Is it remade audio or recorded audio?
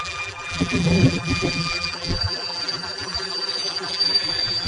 remade